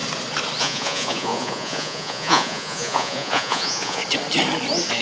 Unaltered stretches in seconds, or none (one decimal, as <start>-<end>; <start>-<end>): 0.0-0.6; 4.0-5.0